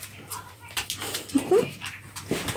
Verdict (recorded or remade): remade